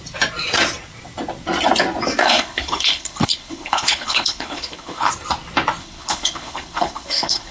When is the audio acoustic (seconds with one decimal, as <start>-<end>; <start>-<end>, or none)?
0.0-2.2; 5.1-5.8